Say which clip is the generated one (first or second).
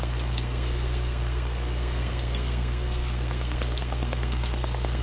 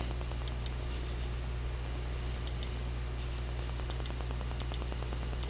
first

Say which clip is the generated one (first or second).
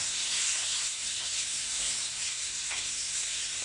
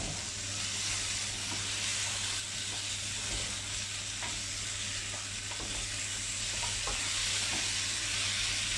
first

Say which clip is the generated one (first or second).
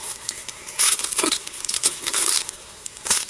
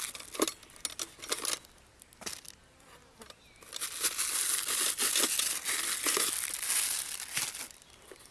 first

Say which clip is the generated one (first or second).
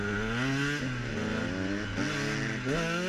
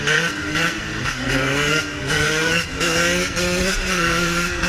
second